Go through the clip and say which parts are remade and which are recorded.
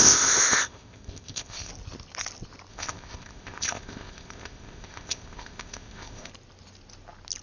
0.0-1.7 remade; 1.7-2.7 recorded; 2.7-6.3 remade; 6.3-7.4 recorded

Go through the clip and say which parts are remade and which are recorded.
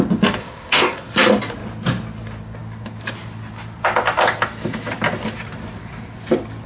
0.0-0.4 recorded; 0.4-1.1 remade; 1.1-6.7 recorded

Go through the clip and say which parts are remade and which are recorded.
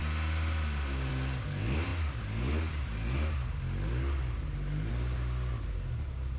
0.0-6.4 recorded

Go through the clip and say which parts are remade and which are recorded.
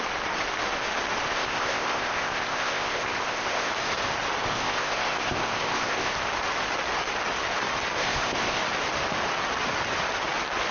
0.0-1.3 recorded; 1.3-3.7 remade; 3.7-4.4 recorded; 4.4-6.1 remade; 6.1-8.0 recorded; 8.0-8.6 remade; 8.6-10.7 recorded